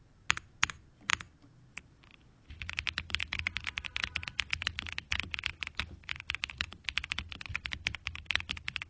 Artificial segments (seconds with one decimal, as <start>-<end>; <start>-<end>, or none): none